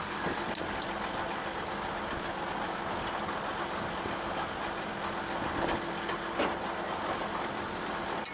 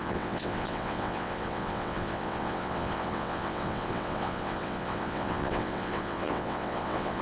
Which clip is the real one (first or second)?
first